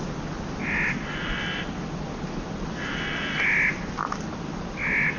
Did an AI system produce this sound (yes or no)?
no